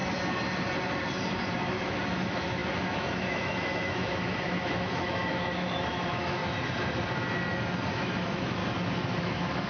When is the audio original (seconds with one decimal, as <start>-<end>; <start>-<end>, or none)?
0.0-1.8; 6.4-7.9; 8.6-9.2